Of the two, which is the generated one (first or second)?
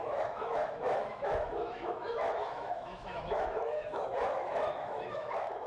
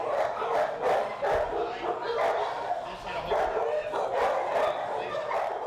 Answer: first